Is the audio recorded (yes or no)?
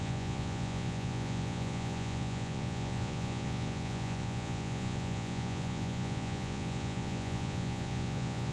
no